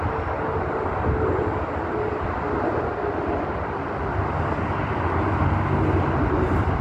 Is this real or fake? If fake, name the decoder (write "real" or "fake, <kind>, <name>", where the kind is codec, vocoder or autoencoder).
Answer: real